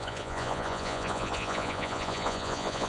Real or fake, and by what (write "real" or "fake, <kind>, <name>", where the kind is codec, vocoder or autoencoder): fake, vocoder, Vocos